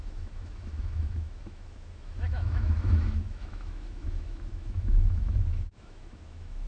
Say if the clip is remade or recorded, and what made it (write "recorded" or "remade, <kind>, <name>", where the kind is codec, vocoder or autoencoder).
remade, autoencoder, DAC-VAE